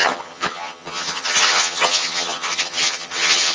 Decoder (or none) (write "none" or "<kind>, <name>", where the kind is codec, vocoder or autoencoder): vocoder, HiFi-GAN